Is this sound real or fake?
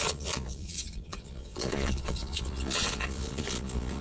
fake